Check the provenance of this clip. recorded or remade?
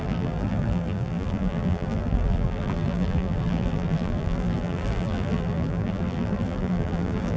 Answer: remade